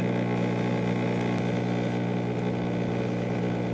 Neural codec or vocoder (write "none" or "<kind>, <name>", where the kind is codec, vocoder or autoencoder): none